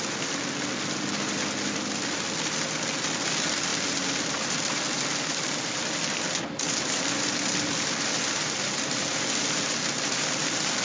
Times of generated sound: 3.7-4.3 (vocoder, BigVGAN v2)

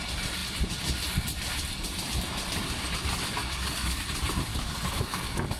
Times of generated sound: 3.4-4.0 (codec, DAC); 4.5-5.6

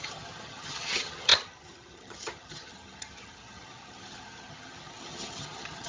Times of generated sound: 0.0-5.9 (vocoder, HiFi-GAN)